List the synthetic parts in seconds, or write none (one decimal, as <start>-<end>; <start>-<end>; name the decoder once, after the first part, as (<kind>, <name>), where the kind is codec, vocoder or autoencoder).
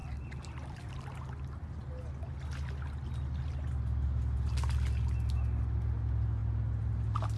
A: none